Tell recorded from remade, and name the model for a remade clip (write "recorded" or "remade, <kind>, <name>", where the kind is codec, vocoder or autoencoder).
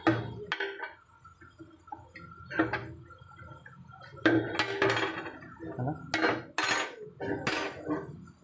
recorded